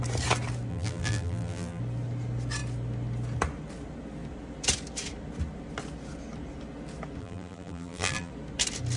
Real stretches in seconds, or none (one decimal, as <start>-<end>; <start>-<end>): 0.0-0.7; 1.8-7.2; 8.3-9.0